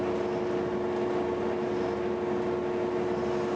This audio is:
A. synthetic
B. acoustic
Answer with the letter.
B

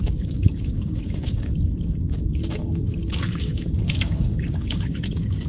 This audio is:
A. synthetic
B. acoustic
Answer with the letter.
A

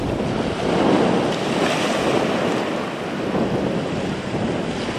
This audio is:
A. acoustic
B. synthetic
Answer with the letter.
A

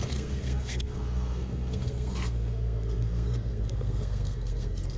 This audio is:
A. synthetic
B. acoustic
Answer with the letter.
A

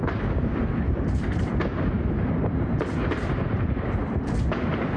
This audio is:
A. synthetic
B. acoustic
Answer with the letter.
A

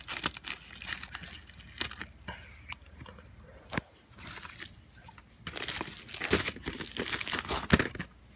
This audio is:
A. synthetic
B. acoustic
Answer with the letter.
B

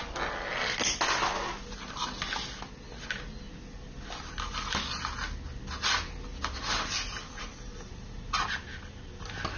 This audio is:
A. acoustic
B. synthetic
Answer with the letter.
A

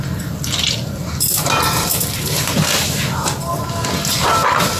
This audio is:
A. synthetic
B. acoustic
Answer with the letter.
A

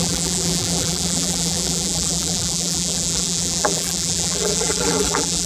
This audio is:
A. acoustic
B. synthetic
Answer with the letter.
B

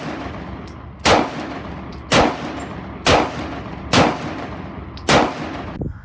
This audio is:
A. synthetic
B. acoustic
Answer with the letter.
B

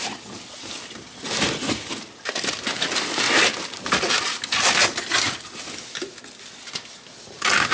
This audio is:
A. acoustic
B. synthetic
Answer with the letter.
A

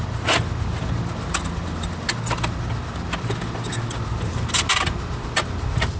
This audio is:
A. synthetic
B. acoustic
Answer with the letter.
B